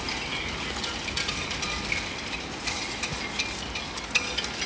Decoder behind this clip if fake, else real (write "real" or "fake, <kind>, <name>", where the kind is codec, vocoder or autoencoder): real